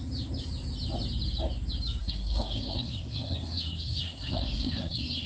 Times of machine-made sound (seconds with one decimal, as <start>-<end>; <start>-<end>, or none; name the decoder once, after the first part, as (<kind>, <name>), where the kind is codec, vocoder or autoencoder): 2.0-5.3 (codec, SNAC)